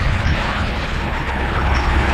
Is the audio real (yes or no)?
no